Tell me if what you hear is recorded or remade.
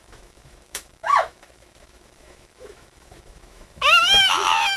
remade